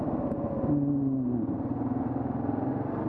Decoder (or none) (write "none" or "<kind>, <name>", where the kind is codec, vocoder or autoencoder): none